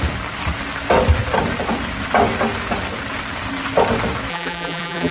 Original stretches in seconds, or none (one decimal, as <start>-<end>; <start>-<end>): 0.0-4.3